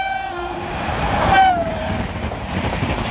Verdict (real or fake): fake